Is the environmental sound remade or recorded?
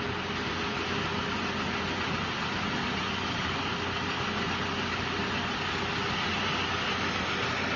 recorded